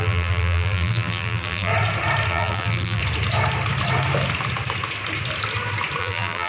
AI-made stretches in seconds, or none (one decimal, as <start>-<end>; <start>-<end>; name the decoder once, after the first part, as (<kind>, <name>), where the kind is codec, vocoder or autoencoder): 0.0-1.7 (vocoder, BigVGAN v2); 2.3-3.0; 6.0-6.5